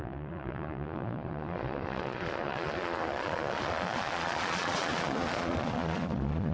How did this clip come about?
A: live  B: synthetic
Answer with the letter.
B